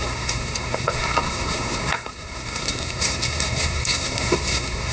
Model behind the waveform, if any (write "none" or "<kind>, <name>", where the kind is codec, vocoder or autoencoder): codec, SNAC